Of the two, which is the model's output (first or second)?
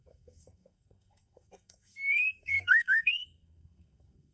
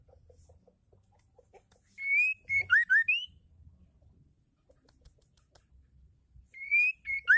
first